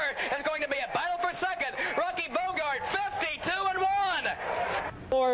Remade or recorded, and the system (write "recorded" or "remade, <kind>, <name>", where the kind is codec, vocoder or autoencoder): recorded